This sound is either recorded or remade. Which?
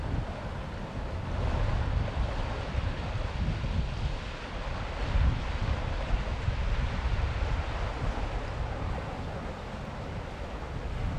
recorded